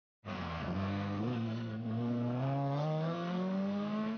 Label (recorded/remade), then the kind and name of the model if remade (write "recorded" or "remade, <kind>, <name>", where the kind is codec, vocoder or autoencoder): remade, codec, SNAC